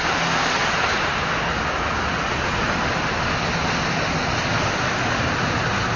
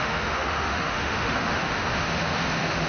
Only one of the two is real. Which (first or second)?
first